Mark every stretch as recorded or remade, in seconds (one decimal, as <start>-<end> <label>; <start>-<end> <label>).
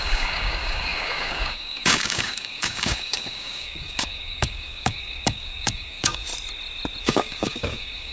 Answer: 0.0-6.3 remade; 6.3-7.0 recorded; 7.0-8.1 remade